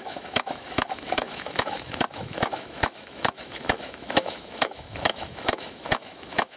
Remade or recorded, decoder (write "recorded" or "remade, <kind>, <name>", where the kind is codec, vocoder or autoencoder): remade, autoencoder, DAC-VAE